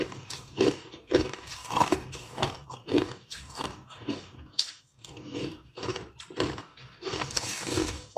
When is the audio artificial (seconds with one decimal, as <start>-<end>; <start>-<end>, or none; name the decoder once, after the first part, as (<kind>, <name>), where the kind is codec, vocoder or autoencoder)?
0.0-6.0 (codec, DAC); 6.6-8.2